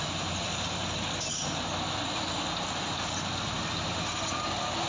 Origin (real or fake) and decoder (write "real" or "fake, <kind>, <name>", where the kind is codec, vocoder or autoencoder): real